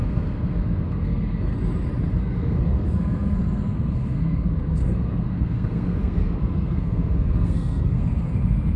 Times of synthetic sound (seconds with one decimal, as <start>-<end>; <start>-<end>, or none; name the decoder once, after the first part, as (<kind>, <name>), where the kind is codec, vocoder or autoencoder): 0.0-1.5 (codec, SNAC); 2.2-8.8